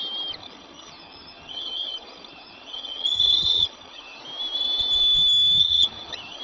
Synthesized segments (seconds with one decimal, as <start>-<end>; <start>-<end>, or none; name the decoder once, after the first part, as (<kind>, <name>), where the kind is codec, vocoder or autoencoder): 0.4-4.2 (vocoder, HiFi-GAN); 5.6-6.4